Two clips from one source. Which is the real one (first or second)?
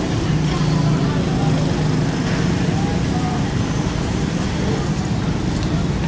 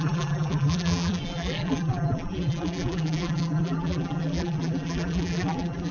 first